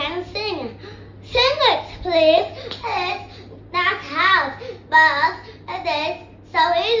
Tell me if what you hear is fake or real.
real